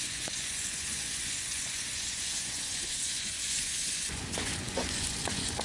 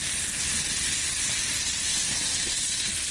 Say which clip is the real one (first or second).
second